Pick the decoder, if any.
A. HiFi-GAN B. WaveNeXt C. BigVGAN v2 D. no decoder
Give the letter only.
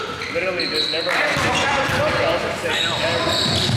D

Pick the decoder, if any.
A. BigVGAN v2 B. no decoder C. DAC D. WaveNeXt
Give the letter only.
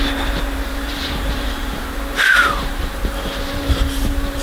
A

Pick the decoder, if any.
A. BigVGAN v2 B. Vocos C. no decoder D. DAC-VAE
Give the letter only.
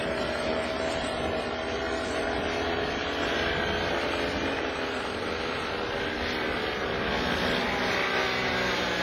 C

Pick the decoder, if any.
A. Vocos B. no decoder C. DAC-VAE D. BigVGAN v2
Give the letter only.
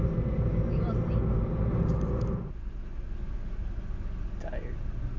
B